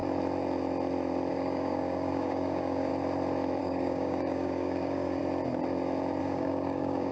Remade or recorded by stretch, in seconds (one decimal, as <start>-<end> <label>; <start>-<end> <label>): 0.0-1.3 recorded; 1.3-2.9 remade; 2.9-3.6 recorded; 3.6-5.2 remade; 5.2-6.2 recorded; 6.2-7.1 remade